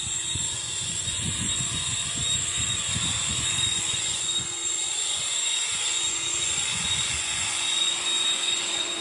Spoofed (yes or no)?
yes